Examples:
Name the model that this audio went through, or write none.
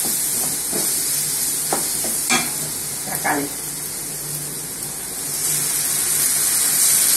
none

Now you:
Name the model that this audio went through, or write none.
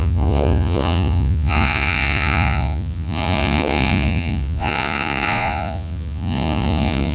vocoder, Vocos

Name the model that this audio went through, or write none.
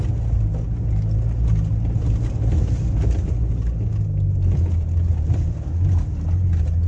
none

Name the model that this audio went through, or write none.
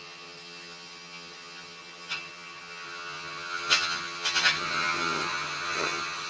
vocoder, HiFi-GAN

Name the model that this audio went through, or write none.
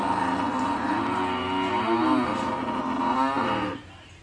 none